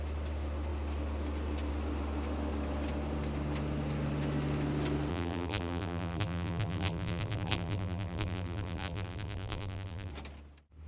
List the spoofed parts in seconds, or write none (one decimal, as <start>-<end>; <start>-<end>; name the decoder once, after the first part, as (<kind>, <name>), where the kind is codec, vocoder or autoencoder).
5.1-10.1 (vocoder, BigVGAN v2)